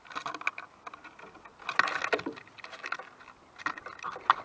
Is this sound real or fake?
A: real